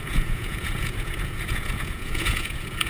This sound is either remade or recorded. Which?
remade